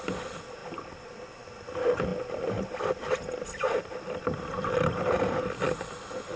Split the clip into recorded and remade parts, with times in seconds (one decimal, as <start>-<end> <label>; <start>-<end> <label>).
0.0-0.6 recorded; 0.6-1.3 remade; 1.3-2.1 recorded; 2.1-5.9 remade; 5.9-6.4 recorded